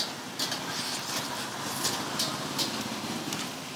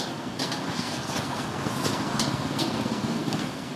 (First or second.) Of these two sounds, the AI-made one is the second